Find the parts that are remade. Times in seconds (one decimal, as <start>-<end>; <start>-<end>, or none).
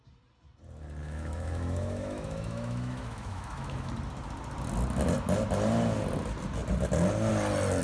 1.0-3.9